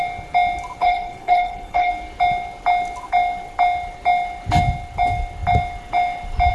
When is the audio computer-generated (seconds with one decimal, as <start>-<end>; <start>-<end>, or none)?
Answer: 0.8-1.9